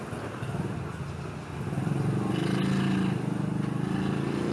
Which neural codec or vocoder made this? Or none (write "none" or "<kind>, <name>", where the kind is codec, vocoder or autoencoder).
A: none